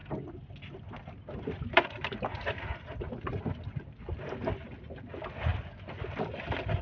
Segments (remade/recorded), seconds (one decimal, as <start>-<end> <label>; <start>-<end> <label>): 0.0-6.8 recorded